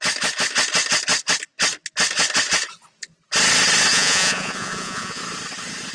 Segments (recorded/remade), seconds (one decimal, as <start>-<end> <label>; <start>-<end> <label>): 0.0-3.9 recorded; 3.9-5.2 remade; 5.2-5.9 recorded